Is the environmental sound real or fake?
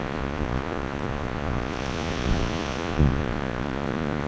fake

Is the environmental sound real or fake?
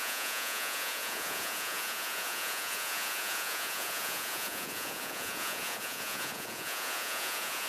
fake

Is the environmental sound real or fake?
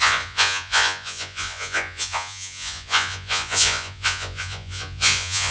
fake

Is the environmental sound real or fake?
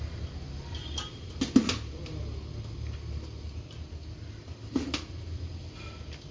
real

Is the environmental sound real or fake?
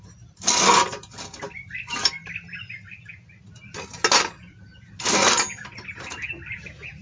real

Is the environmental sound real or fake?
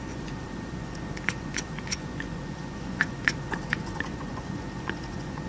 fake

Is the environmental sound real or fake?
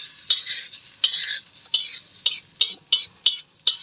real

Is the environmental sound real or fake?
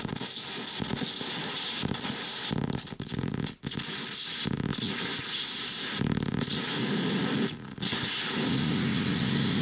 real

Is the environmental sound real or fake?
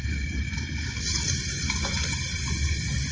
real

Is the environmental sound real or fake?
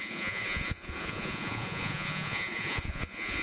fake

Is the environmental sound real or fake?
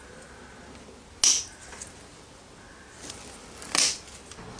real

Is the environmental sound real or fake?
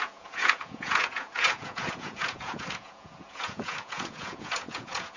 fake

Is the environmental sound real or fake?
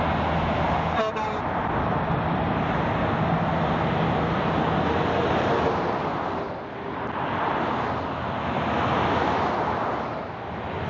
real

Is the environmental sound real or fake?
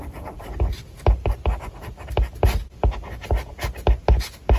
real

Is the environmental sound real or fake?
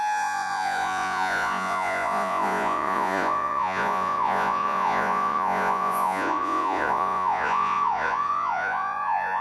fake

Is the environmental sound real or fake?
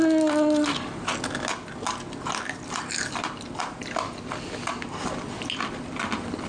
real